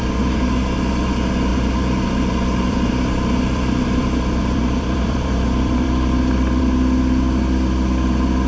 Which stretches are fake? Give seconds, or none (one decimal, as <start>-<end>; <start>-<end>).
1.5-6.6